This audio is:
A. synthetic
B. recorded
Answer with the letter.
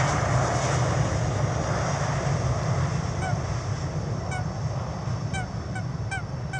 B